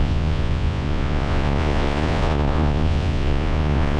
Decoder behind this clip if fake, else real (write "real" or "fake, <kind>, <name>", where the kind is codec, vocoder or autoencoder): fake, vocoder, Vocos